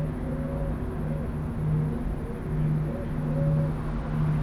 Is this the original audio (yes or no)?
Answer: yes